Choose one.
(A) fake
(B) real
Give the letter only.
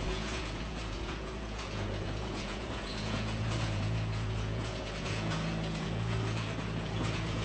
A